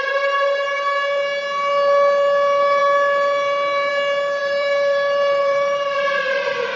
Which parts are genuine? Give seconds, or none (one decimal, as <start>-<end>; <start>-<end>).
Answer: 0.0-4.4